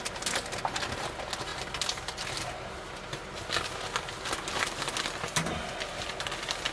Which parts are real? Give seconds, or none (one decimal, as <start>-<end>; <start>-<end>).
0.0-6.7